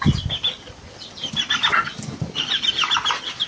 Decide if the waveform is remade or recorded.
recorded